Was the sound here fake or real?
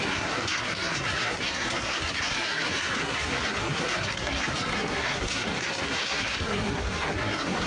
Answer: fake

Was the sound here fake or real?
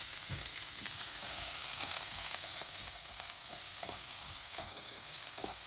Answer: fake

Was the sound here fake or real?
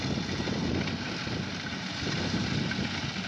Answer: real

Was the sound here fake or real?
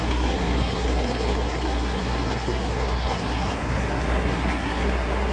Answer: fake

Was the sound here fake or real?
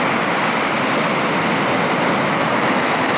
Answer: real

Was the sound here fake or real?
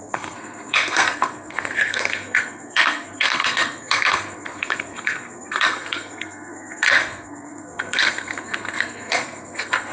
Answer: fake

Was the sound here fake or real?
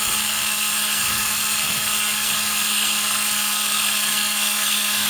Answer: fake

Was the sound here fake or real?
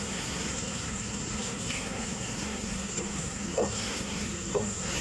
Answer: fake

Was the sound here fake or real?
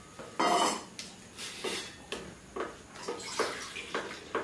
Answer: real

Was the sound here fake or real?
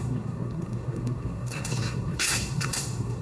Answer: fake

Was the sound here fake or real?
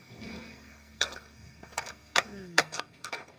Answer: fake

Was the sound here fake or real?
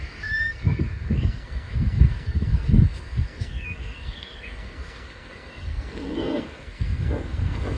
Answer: fake